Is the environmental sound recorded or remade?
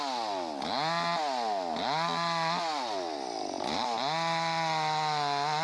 recorded